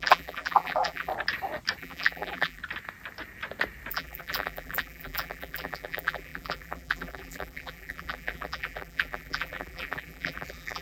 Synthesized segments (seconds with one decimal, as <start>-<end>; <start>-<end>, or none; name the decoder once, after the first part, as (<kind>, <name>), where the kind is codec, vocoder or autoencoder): 0.0-1.1 (vocoder, BigVGAN v2); 1.8-2.6; 3.9-10.8